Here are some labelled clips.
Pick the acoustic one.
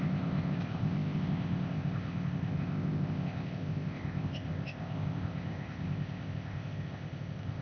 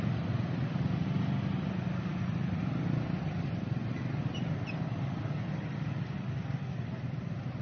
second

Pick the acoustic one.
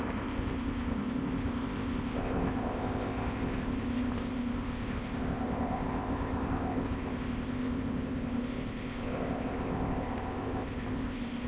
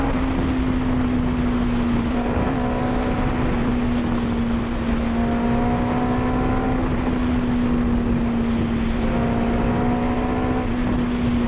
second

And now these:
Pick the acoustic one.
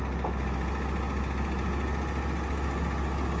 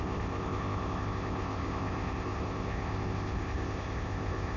first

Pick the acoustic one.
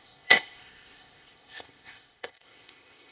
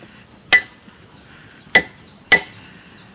second